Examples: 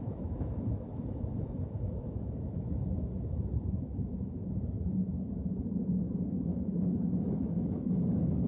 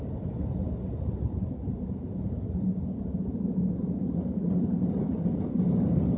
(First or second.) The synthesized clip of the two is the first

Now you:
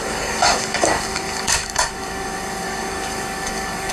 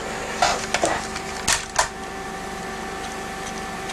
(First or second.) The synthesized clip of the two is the first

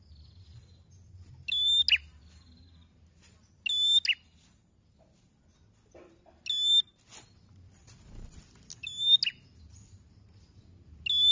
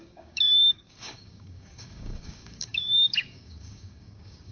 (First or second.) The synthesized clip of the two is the second